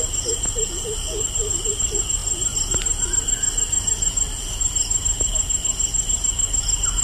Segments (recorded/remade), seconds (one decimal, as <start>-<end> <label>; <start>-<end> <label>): 0.0-7.0 recorded